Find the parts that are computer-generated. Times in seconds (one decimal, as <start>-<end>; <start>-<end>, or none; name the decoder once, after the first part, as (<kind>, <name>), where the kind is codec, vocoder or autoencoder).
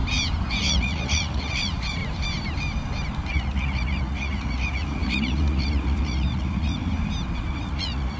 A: 0.6-2.0 (vocoder, Vocos); 3.3-6.9; 7.5-8.2